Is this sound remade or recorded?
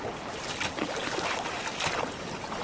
recorded